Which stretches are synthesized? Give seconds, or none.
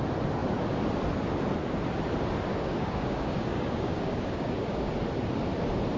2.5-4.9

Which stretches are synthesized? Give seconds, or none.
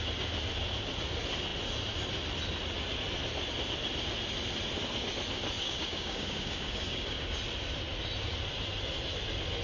5.6-7.3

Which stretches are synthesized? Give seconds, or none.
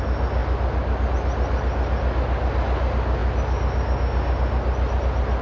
none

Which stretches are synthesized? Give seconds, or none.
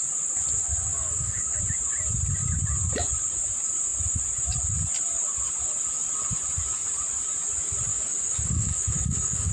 0.9-1.6; 7.9-9.5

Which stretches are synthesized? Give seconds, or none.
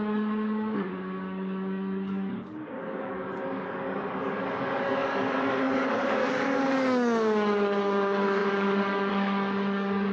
0.0-10.1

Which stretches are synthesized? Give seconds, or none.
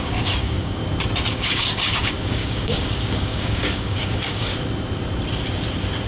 0.0-0.8; 1.3-4.5